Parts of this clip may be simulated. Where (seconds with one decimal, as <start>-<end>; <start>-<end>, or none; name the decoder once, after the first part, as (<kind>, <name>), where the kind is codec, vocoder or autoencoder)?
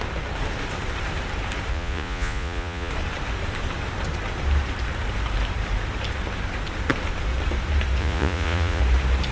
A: 1.7-2.9 (vocoder, Vocos); 8.0-8.8